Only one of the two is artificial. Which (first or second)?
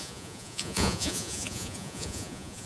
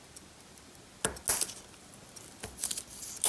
first